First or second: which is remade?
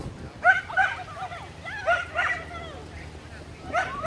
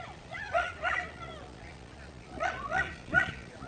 second